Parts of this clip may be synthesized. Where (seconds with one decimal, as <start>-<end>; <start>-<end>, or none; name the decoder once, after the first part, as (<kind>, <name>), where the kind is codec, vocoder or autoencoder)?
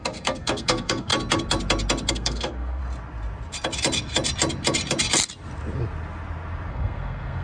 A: 0.0-1.1 (codec, SNAC); 2.1-2.8; 6.7-7.4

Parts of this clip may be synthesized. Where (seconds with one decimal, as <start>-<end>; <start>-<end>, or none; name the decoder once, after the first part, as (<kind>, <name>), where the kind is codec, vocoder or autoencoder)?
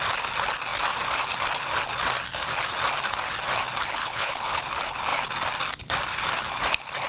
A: 4.0-4.6 (codec, HILCodec)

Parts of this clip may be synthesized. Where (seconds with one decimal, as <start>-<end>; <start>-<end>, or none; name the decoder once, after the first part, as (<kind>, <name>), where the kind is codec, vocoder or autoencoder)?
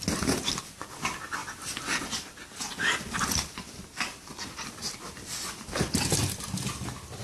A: none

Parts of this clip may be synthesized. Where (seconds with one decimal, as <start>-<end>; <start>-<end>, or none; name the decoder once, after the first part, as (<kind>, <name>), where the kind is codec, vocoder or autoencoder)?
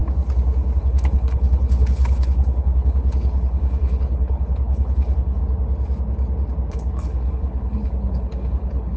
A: 0.8-5.4 (codec, HILCodec); 6.7-9.0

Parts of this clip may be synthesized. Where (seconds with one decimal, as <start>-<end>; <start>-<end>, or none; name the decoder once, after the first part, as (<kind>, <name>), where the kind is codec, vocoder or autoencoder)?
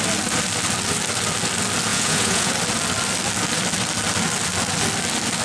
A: 1.9-2.5 (vocoder, Vocos)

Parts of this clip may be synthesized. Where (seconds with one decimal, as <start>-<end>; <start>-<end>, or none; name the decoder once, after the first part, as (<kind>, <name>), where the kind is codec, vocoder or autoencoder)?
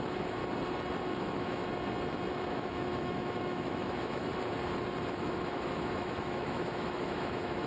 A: 0.0-0.4 (autoencoder, DAC-VAE); 1.1-1.6; 2.3-4.3; 5.1-7.7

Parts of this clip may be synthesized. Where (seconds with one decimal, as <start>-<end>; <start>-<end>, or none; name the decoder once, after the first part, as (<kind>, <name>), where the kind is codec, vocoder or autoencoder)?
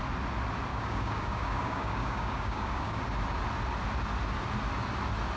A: 0.7-3.0 (codec, DAC)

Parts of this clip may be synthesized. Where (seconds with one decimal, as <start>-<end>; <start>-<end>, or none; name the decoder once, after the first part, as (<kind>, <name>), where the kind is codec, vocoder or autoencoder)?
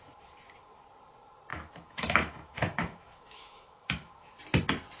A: 1.5-4.4 (autoencoder, DAC-VAE)